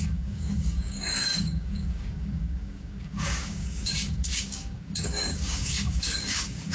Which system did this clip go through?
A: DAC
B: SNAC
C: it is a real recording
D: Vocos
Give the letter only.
A